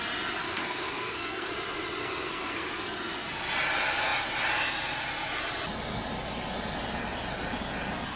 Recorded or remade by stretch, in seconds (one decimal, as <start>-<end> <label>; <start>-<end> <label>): 0.0-0.5 recorded; 0.5-1.5 remade; 1.5-2.0 recorded; 2.0-2.7 remade; 2.7-8.2 recorded